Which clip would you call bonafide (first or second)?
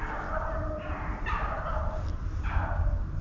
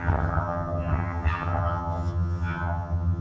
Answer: first